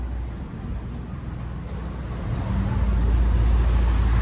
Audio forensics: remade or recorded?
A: recorded